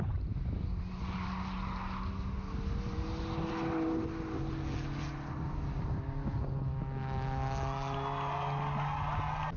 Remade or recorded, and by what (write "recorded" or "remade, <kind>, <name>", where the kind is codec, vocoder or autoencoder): recorded